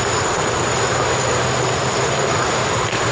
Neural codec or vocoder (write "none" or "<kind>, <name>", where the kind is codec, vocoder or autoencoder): none